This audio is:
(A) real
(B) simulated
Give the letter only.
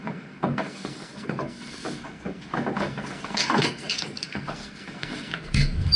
B